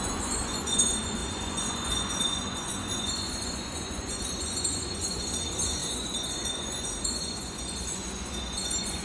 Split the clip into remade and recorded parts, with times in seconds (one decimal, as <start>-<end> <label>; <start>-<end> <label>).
0.0-9.0 remade